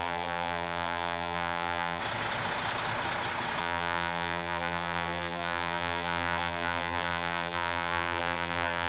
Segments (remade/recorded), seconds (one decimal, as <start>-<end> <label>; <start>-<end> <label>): 0.0-2.0 remade; 2.0-3.6 recorded; 3.6-8.9 remade